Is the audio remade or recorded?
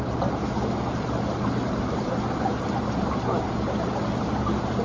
recorded